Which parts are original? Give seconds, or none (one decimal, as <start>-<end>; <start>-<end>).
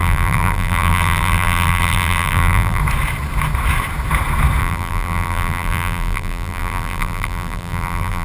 2.8-4.6